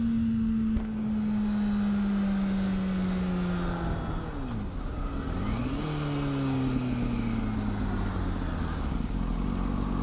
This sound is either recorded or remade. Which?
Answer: recorded